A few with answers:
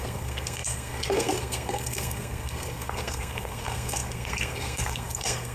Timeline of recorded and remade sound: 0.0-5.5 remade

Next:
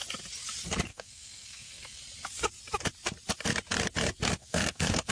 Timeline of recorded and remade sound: 0.0-0.9 recorded; 0.9-2.0 remade; 2.0-4.4 recorded; 4.4-5.1 remade

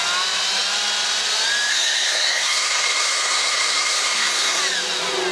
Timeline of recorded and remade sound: 0.0-1.7 recorded; 1.7-4.6 remade; 4.6-5.3 recorded

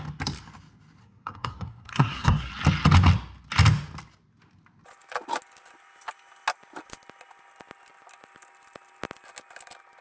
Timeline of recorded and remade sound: 0.0-1.0 recorded; 1.0-2.5 remade; 2.5-10.0 recorded